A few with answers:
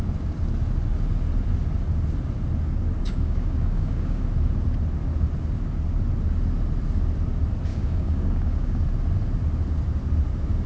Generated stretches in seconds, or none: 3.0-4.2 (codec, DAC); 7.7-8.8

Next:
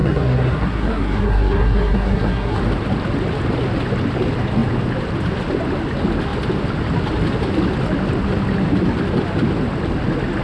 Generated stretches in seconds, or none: 0.0-2.6 (codec, SNAC)

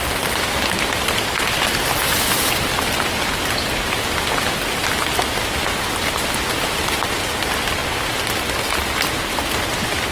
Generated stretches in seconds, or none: none

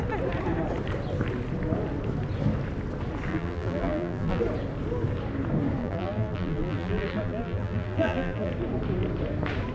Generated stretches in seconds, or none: 3.3-4.4 (vocoder, BigVGAN v2); 5.8-8.5